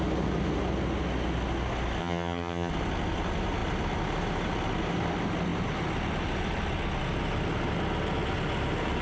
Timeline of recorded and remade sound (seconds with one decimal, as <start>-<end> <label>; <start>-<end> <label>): 0.0-2.0 recorded; 2.0-2.7 remade; 2.7-9.0 recorded